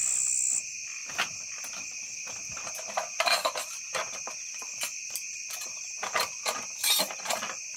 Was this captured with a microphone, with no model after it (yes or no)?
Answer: yes